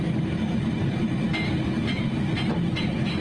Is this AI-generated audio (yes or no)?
no